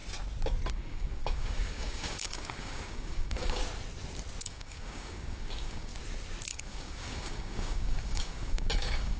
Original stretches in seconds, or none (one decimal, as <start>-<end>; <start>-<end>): 0.0-0.7; 3.6-4.4; 5.9-6.5